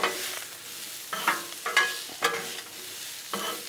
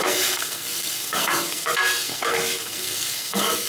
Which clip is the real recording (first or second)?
first